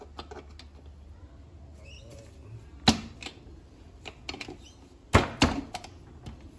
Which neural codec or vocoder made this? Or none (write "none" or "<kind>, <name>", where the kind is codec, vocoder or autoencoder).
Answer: none